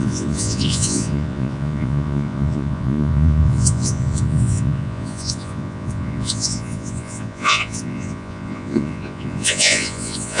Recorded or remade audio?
remade